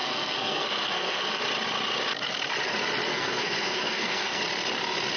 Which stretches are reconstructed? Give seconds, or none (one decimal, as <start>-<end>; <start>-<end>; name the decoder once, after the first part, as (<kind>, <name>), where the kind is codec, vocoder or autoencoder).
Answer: 0.0-1.4 (codec, SNAC); 3.1-4.4